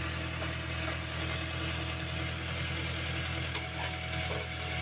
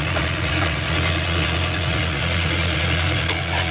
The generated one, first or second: second